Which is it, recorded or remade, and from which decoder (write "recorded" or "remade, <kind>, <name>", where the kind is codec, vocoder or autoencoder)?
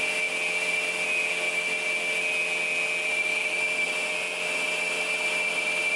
recorded